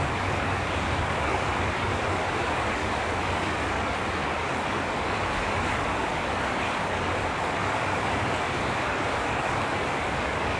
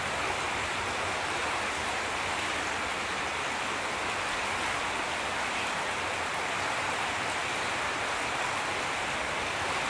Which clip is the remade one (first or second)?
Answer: first